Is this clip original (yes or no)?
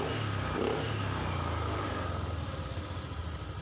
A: yes